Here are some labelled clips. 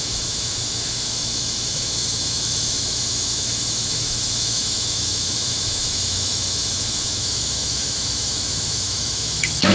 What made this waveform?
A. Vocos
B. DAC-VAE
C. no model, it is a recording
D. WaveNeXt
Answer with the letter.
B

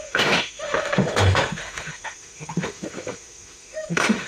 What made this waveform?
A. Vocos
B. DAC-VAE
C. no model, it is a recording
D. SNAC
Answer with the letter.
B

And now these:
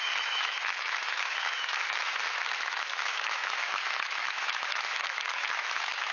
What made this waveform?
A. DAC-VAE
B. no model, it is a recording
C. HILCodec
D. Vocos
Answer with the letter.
A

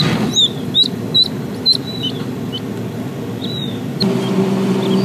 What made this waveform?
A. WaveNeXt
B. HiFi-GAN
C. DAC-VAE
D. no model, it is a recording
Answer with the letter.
D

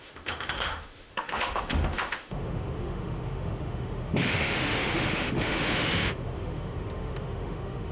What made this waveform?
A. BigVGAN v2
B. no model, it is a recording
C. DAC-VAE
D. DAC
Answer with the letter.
C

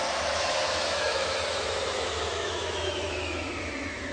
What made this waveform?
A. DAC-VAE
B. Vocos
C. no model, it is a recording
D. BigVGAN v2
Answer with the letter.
A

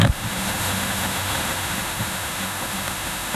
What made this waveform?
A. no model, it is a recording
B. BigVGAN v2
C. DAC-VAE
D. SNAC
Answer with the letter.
C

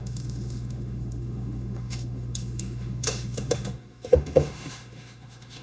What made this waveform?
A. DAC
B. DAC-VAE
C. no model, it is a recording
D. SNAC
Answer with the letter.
B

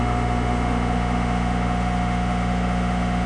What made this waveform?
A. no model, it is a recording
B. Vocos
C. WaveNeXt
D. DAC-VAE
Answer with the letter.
D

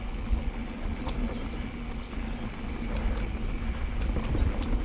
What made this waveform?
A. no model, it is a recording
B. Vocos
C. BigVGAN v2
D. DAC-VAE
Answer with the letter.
A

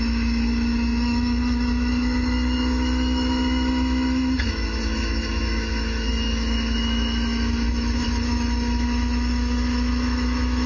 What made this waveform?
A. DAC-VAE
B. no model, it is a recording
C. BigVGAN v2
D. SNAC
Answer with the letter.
A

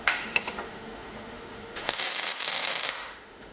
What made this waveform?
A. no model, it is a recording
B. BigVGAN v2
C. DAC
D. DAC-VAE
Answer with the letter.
D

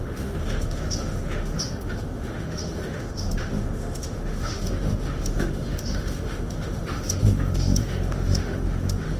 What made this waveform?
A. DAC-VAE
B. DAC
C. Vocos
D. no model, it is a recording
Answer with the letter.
A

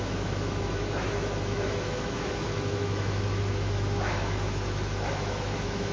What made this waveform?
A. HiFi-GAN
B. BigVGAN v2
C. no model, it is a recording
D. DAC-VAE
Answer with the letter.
D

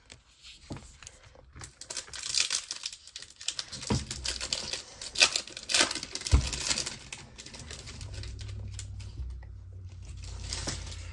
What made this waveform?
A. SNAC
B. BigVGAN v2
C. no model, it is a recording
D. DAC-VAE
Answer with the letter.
C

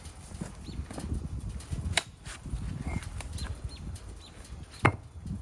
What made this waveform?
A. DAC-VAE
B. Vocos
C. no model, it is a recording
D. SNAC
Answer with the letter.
C